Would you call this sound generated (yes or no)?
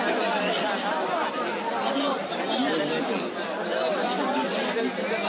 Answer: no